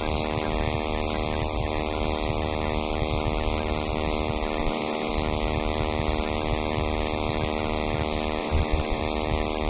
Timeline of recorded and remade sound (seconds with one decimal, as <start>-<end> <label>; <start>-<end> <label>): 0.0-4.6 recorded; 4.6-5.1 remade; 5.1-8.4 recorded; 8.4-9.0 remade; 9.0-9.7 recorded